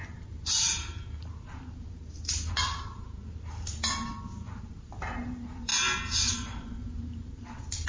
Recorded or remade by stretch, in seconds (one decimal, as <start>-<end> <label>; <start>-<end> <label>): 0.0-5.7 remade; 5.7-6.3 recorded; 6.3-7.9 remade